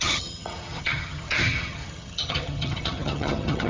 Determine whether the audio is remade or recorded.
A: remade